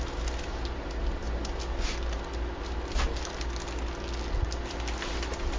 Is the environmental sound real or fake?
real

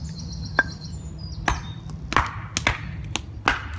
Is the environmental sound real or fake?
real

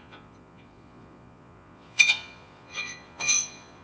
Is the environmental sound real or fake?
fake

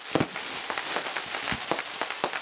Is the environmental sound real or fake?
real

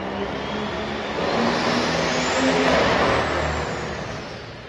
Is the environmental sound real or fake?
real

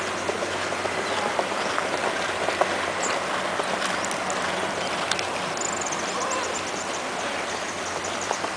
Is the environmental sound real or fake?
real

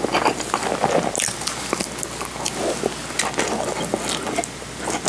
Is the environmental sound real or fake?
real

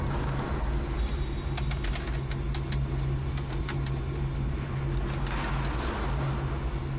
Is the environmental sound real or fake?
real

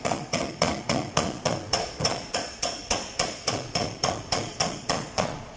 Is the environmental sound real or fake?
fake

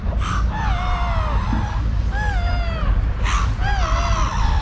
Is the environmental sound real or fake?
real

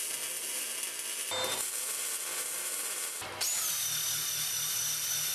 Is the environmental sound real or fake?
real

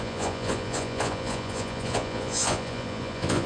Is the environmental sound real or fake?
fake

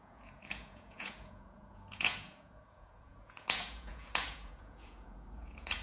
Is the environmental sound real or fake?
fake